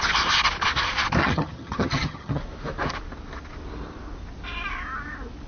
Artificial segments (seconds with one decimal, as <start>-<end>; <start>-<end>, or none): 1.2-2.4